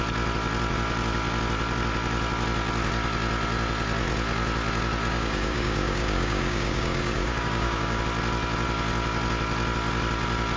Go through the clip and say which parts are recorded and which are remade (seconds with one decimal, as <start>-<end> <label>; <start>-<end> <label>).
0.0-5.1 recorded; 5.1-8.0 remade; 8.0-10.6 recorded